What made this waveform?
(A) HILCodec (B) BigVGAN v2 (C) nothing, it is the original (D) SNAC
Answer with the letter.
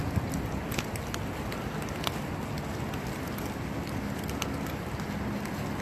C